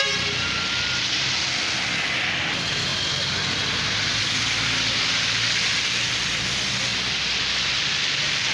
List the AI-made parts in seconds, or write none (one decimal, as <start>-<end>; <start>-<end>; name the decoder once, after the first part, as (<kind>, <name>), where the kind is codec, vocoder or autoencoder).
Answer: none